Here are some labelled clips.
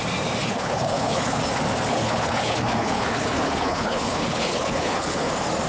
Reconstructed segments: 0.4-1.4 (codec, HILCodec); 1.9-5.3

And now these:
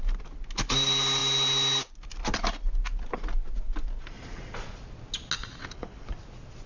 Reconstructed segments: 5.6-6.1 (codec, HILCodec)

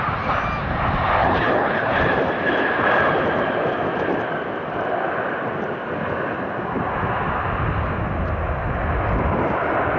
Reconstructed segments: 1.2-2.0 (codec, HILCodec)

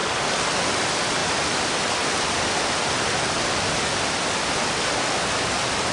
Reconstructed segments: none

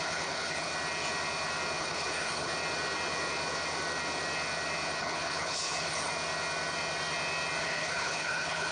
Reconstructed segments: 0.0-0.7 (codec, HILCodec); 1.8-2.5; 5.0-6.1; 7.6-8.7

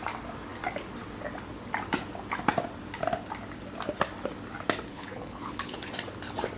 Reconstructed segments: 4.9-5.9 (codec, HILCodec)

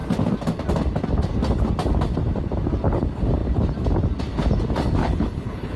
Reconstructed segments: 5.0-5.8 (codec, HILCodec)

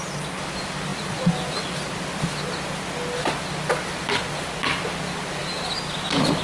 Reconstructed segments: none